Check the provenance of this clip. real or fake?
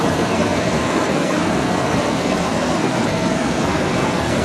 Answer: fake